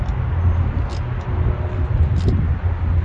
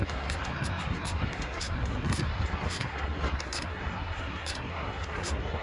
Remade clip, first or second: second